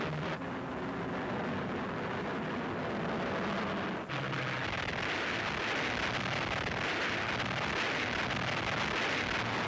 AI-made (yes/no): no